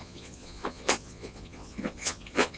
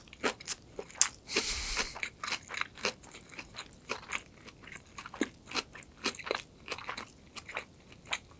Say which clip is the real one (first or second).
second